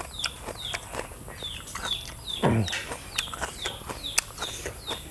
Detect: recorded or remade recorded